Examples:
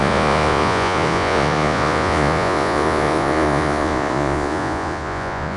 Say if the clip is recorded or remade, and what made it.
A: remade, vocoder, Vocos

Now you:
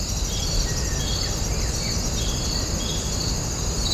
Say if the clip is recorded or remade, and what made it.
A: recorded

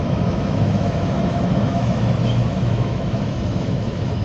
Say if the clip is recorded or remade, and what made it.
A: remade, autoencoder, DAC-VAE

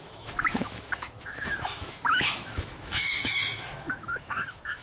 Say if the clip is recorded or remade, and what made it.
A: remade, autoencoder, DAC-VAE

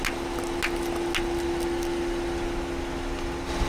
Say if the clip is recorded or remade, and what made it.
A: recorded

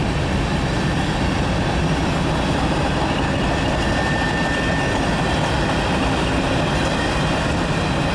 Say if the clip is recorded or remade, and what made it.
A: recorded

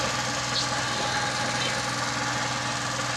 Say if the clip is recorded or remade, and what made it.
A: recorded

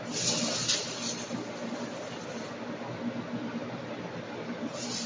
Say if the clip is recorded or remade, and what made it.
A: recorded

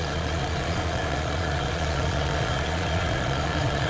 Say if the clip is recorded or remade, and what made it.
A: remade, vocoder, Vocos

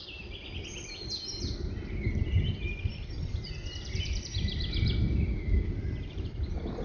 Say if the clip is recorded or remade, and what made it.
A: recorded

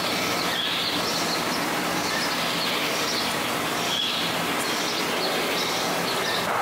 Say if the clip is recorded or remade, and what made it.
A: recorded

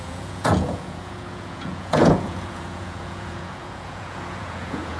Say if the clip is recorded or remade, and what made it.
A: remade, vocoder, Vocos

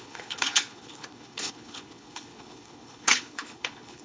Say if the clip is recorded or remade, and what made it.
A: remade, codec, HILCodec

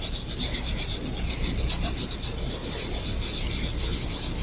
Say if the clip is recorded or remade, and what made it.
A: recorded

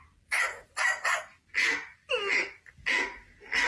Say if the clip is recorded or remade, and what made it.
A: recorded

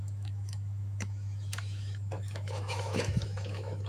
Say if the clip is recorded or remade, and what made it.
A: remade, autoencoder, DAC-VAE